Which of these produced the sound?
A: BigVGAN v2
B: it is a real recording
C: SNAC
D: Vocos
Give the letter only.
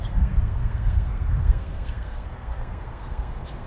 C